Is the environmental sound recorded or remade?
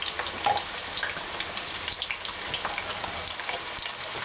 recorded